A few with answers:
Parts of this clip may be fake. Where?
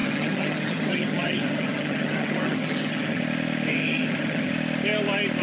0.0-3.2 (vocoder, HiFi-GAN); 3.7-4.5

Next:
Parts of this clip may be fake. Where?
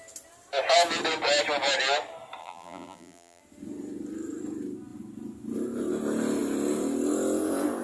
2.4-3.4 (vocoder, BigVGAN v2)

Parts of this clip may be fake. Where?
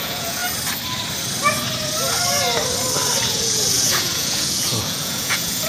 0.0-0.4 (vocoder, Vocos); 3.3-5.7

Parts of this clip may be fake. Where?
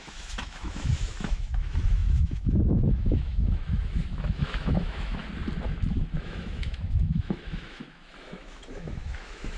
0.0-5.2 (autoencoder, DAC-VAE); 6.2-9.6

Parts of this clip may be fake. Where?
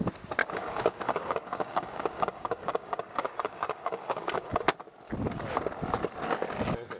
0.4-4.6 (codec, DAC)